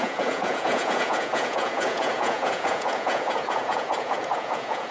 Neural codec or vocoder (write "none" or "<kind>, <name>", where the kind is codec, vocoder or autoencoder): vocoder, Vocos